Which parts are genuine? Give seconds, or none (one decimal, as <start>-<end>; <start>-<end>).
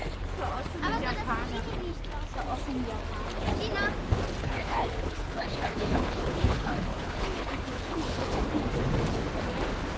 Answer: 0.0-4.4; 8.4-10.0